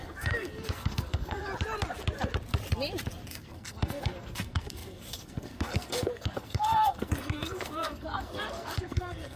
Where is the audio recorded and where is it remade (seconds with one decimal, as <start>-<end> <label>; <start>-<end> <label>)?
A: 0.0-1.5 remade; 1.5-3.3 recorded; 3.3-9.4 remade